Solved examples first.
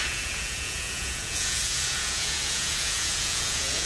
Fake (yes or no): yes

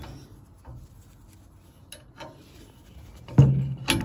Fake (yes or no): no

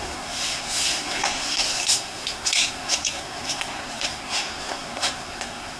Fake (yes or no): yes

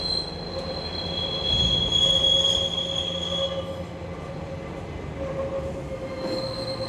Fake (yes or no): no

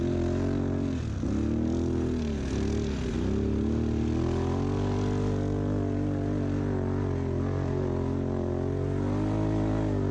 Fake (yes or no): no